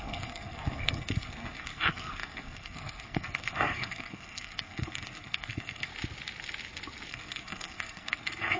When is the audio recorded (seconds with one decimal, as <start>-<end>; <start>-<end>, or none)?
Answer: 5.9-7.1

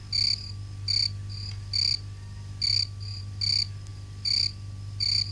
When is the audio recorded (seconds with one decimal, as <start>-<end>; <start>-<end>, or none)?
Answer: 0.0-5.3

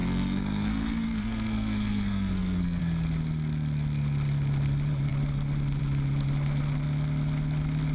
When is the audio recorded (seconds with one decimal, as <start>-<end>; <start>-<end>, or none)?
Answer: 2.8-7.9

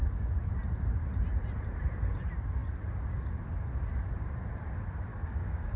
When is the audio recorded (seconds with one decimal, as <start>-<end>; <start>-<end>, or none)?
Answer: 0.0-5.1

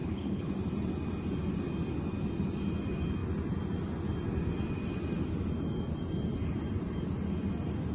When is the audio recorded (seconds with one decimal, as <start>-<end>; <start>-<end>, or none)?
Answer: 0.5-7.9

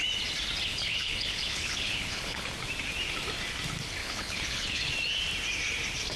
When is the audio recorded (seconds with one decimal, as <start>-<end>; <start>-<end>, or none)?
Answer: 0.0-0.7; 2.5-4.0; 4.9-6.2